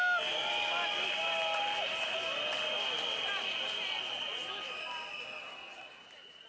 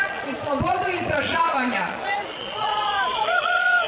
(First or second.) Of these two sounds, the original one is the first